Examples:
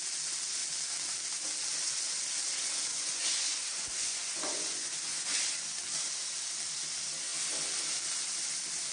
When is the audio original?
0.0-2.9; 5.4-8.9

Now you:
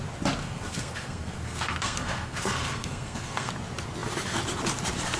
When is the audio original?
0.0-0.4; 3.5-5.2